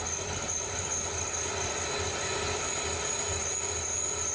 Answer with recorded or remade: recorded